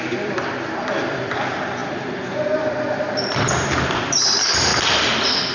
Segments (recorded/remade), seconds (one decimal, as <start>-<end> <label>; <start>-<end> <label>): 0.0-5.5 remade